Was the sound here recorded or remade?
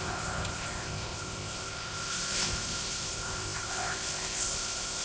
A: remade